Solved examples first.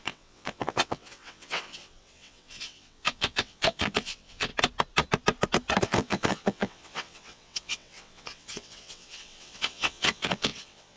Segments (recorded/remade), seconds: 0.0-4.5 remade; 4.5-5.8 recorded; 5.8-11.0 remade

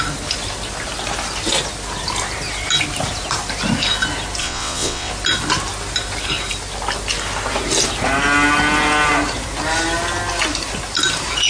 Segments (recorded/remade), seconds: 0.0-4.4 recorded; 4.4-5.1 remade; 5.1-11.5 recorded